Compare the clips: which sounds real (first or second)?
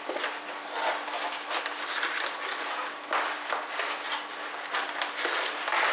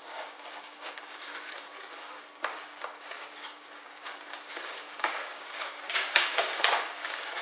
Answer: first